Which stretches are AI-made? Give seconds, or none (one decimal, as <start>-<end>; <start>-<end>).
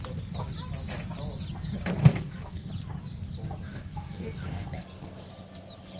2.0-2.7; 3.7-5.3